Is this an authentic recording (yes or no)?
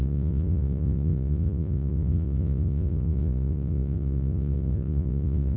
no